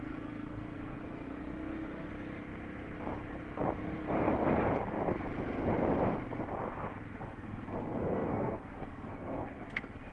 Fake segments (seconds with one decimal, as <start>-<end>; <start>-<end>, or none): 0.0-2.1; 7.2-10.1